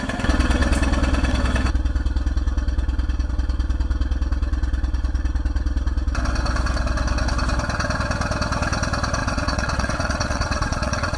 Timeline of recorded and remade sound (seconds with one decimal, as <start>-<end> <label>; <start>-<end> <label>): 0.0-9.2 recorded; 9.2-11.2 remade